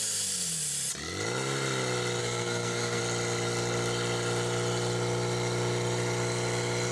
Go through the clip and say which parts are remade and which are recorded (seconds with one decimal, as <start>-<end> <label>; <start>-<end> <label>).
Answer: 0.0-2.2 recorded; 2.2-3.0 remade; 3.0-6.9 recorded